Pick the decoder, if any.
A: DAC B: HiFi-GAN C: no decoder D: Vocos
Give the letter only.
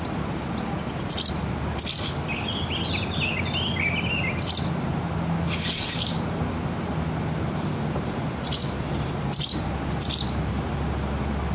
C